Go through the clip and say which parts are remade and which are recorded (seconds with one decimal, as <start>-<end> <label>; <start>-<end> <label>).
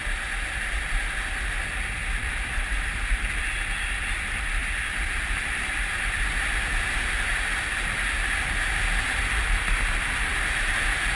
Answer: 0.0-11.1 recorded